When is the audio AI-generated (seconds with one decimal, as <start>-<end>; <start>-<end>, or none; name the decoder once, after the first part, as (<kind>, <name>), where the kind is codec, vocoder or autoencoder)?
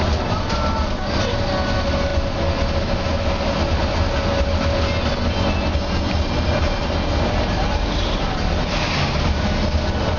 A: none